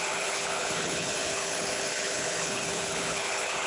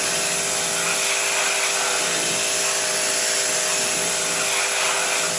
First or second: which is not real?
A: first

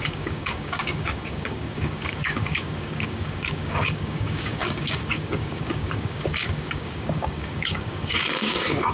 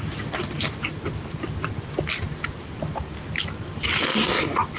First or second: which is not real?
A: first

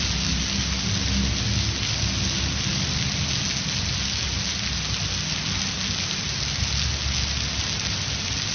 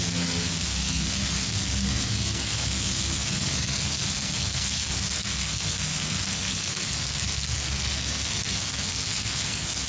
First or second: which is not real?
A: second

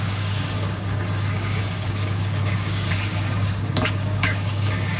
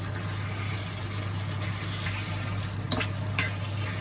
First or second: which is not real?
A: first